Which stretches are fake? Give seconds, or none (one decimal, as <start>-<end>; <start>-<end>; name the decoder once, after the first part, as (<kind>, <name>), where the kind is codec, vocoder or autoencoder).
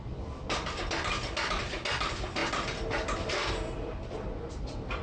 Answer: none